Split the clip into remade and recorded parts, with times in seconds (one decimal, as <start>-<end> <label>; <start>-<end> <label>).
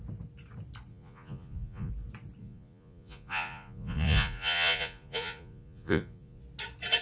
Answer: 0.0-0.9 recorded; 0.9-1.9 remade; 1.9-2.4 recorded; 2.4-6.4 remade; 6.4-7.0 recorded